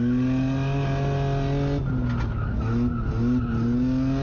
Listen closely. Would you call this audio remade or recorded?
recorded